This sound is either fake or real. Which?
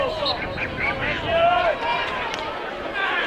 real